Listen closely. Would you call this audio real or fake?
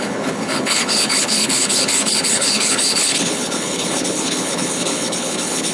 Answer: fake